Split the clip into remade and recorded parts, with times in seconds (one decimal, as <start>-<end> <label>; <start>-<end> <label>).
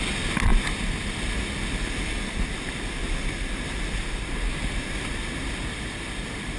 0.0-6.6 recorded